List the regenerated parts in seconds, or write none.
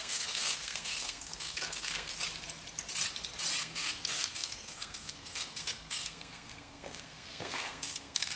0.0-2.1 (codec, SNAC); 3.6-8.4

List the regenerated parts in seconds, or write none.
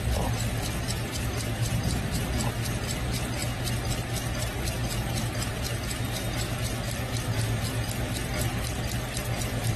none